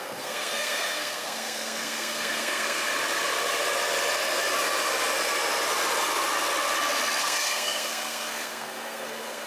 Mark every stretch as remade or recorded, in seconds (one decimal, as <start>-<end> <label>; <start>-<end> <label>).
0.0-2.9 remade; 2.9-7.2 recorded; 7.2-9.5 remade